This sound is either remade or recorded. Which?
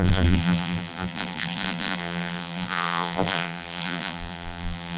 remade